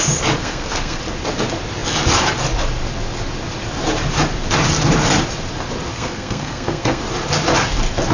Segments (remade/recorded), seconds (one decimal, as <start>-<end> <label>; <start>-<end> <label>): 0.0-0.4 recorded; 0.4-1.0 remade; 1.0-5.9 recorded; 5.9-7.0 remade; 7.0-8.1 recorded

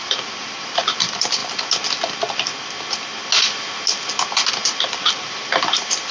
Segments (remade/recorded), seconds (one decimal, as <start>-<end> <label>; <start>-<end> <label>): 0.0-1.4 remade; 1.4-4.5 recorded; 4.5-6.1 remade

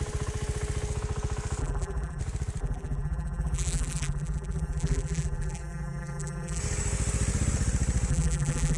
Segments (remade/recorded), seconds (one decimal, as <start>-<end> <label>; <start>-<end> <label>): 0.0-1.6 recorded; 1.6-2.2 remade; 2.2-2.6 recorded; 2.6-6.6 remade; 6.6-8.1 recorded; 8.1-8.8 remade

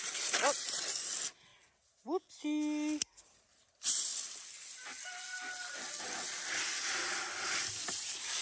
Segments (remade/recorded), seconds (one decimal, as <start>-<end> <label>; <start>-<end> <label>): 0.0-8.4 recorded

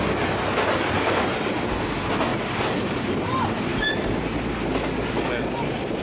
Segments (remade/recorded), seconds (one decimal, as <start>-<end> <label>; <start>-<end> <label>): 0.0-6.0 recorded